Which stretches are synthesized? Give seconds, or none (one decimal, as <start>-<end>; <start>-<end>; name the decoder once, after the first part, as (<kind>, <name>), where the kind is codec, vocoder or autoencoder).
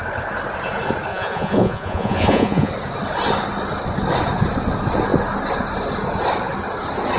1.1-2.7 (vocoder, Vocos)